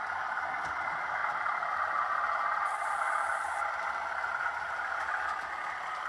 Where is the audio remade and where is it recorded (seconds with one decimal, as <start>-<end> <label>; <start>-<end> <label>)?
0.0-6.1 recorded